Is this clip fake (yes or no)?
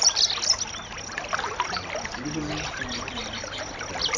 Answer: no